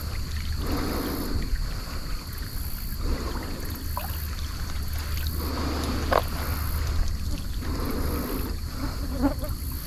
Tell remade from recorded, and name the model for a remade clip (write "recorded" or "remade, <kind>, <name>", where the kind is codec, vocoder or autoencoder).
recorded